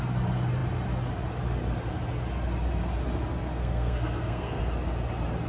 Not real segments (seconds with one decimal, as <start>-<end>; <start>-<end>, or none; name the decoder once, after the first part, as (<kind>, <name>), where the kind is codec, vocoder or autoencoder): 3.5-4.6 (codec, SNAC)